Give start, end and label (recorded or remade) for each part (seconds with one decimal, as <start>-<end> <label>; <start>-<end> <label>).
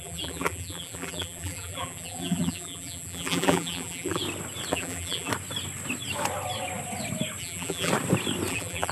0.0-4.2 remade; 4.2-4.7 recorded; 4.7-5.3 remade; 5.3-7.4 recorded; 7.4-7.9 remade; 7.9-8.5 recorded; 8.5-8.9 remade